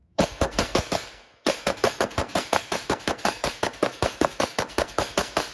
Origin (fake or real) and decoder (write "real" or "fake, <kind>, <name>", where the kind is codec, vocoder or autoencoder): fake, codec, SNAC